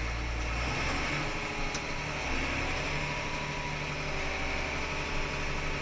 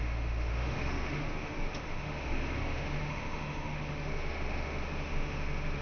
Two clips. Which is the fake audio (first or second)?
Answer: second